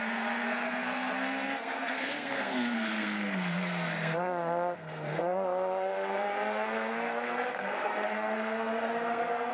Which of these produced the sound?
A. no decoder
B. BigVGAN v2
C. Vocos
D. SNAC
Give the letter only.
D